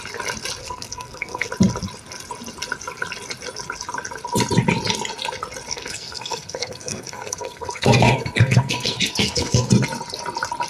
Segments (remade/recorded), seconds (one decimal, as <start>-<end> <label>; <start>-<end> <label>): 0.0-0.6 recorded; 0.6-1.5 remade; 1.5-5.7 recorded; 5.7-9.7 remade; 9.7-10.7 recorded